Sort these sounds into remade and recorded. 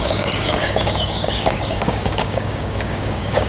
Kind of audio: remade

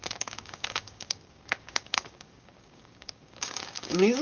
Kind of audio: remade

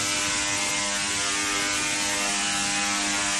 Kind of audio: recorded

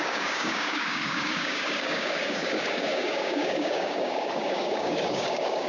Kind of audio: remade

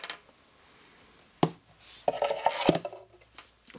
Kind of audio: recorded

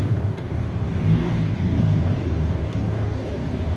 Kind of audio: remade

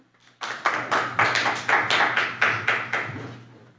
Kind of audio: recorded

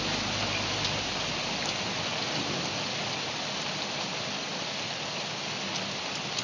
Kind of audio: recorded